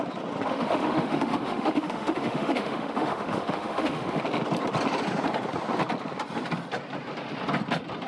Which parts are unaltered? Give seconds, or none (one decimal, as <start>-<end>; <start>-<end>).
0.0-0.5; 4.2-8.1